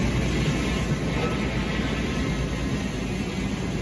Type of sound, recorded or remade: recorded